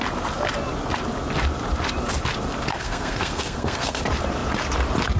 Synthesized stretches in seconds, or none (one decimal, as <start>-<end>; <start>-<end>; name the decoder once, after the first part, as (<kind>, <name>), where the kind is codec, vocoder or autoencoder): 2.7-4.0 (codec, SNAC)